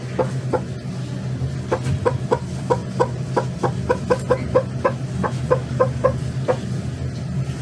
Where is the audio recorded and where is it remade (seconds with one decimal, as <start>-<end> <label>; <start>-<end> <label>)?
0.0-7.6 recorded